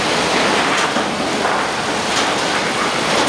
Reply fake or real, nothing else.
real